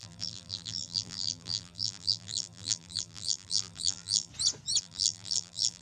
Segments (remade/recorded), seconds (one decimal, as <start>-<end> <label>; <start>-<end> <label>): 0.0-4.3 remade; 4.3-4.8 recorded; 4.8-5.8 remade